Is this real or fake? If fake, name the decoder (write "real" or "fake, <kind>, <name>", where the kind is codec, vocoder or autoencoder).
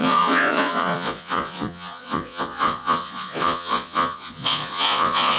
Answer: fake, vocoder, Vocos